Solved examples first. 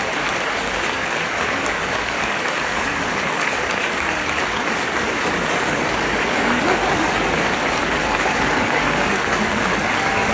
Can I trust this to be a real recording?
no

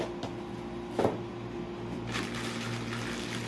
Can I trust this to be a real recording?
yes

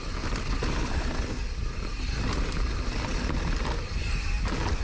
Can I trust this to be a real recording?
yes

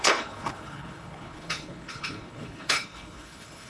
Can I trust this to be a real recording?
no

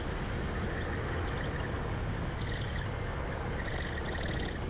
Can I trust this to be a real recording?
yes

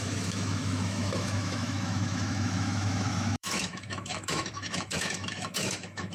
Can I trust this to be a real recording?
no